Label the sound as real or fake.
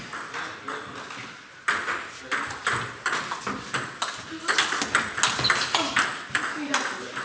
real